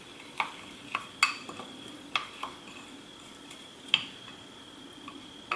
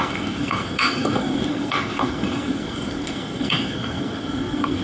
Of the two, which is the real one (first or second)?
first